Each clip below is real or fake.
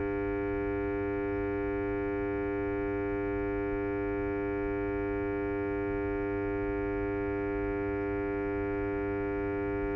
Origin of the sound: real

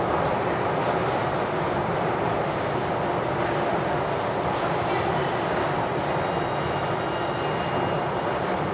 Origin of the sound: real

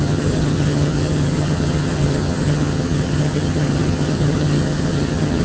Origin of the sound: fake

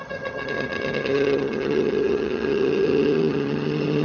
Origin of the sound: fake